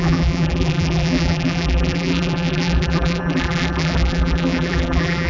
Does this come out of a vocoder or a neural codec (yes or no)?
yes